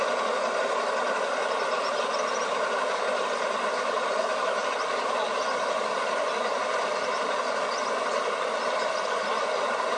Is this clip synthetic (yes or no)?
no